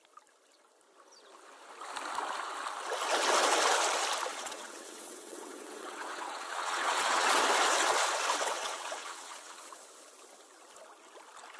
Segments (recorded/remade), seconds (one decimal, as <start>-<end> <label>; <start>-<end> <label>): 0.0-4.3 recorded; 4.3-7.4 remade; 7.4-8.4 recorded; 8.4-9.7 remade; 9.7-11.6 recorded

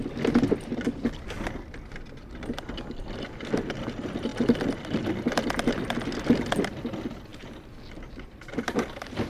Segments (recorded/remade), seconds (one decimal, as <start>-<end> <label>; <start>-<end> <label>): 0.0-9.3 recorded

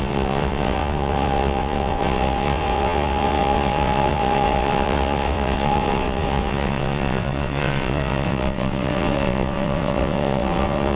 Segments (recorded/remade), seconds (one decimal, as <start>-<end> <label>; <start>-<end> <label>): 0.0-11.0 remade

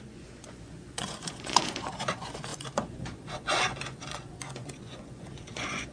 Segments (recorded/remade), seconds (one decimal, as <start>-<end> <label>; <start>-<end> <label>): 0.0-5.9 remade